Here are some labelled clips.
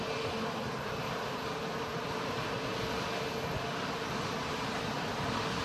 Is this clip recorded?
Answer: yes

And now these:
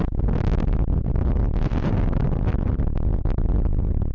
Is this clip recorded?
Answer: yes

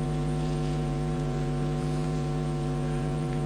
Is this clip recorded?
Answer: no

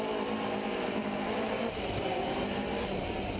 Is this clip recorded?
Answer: no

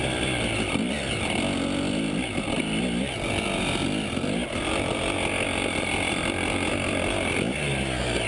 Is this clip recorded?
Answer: yes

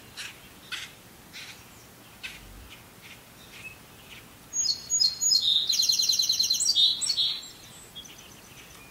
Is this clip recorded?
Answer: yes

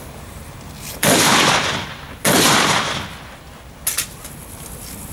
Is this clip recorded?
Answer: yes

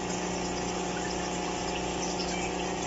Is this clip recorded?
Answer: yes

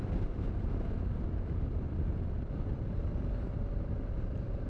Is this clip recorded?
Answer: yes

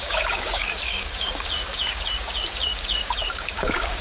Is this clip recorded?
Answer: no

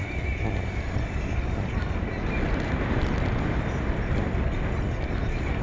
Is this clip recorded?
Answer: yes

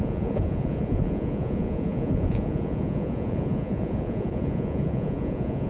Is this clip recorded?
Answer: no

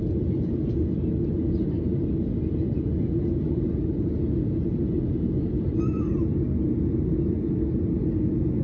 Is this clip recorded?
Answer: yes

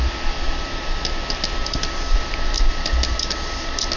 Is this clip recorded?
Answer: yes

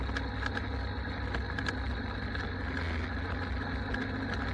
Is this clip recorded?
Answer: yes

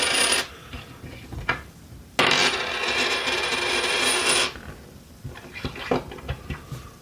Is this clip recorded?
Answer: yes